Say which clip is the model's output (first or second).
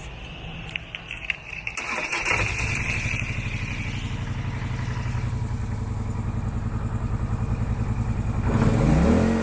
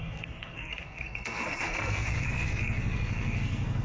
second